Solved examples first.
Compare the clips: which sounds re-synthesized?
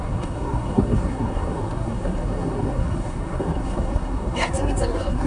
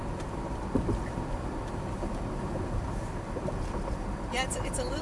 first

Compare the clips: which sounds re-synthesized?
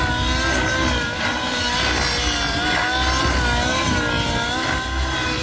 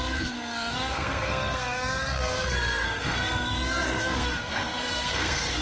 second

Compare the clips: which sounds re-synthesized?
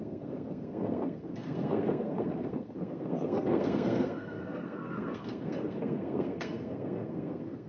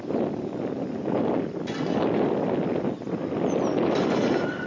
first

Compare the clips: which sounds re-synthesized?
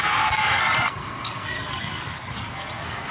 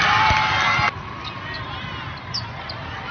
first